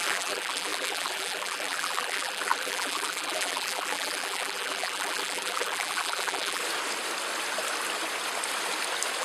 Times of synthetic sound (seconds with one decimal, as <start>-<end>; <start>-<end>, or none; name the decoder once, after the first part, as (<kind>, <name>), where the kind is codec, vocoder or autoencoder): 0.0-6.6 (vocoder, BigVGAN v2)

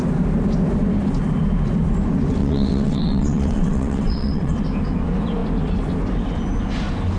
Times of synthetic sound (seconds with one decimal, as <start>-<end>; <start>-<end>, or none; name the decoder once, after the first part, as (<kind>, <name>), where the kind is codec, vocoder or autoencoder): 2.4-4.5 (vocoder, WaveNeXt)